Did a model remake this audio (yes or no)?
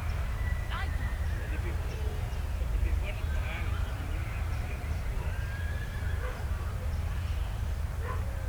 yes